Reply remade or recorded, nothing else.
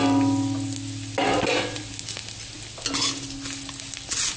recorded